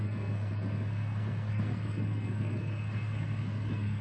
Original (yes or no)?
no